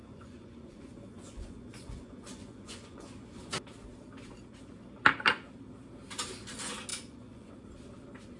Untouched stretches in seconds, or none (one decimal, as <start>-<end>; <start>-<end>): 3.5-6.9; 7.5-8.4